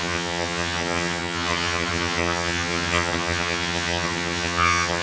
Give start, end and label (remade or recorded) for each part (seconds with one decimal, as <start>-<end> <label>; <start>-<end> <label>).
0.0-5.0 remade